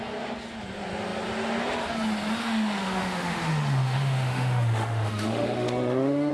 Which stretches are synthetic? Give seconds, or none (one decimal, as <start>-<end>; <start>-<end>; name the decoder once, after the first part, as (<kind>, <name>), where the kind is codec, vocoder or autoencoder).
2.4-6.3 (autoencoder, DAC-VAE)